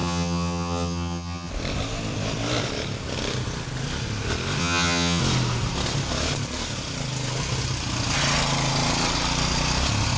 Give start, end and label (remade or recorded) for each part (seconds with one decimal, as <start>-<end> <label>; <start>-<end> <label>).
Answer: 0.0-1.5 remade; 1.5-4.6 recorded; 4.6-5.2 remade; 5.2-10.2 recorded